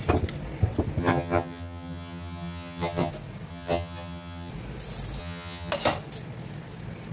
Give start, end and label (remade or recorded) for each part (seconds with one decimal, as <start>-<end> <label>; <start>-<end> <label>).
0.0-1.0 recorded; 1.0-3.1 remade; 3.1-3.5 recorded; 3.5-4.5 remade; 4.5-5.2 recorded; 5.2-5.7 remade; 5.7-7.1 recorded